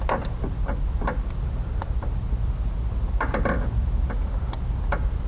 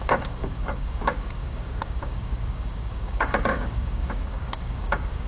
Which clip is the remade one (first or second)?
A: second